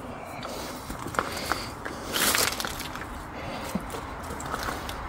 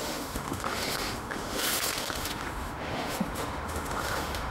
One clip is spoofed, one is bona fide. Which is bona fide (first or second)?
first